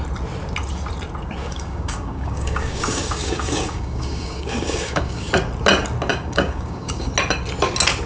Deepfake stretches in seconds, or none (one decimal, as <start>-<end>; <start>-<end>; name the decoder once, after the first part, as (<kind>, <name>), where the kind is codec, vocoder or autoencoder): 1.4-5.3 (codec, DAC); 6.1-7.1